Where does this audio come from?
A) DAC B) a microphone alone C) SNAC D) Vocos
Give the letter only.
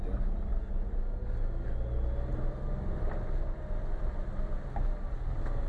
B